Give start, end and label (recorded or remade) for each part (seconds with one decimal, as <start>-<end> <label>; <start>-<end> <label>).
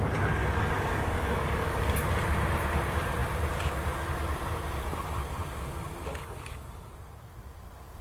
0.0-0.4 recorded; 0.4-2.2 remade; 2.2-6.1 recorded; 6.1-6.9 remade; 6.9-8.0 recorded